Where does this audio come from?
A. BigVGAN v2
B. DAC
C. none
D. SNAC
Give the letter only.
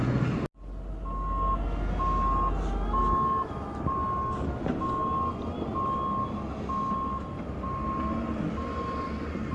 C